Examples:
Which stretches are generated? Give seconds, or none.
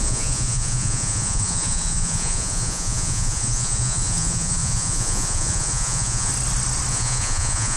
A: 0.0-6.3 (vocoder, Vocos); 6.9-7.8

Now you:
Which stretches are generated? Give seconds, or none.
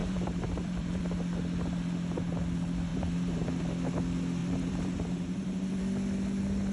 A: 0.0-1.0 (vocoder, BigVGAN v2); 2.9-3.5; 4.4-5.8